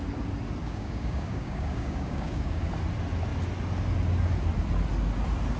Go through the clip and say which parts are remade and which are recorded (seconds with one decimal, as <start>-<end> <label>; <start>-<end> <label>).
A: 0.0-0.6 recorded; 0.6-2.7 remade; 2.7-5.6 recorded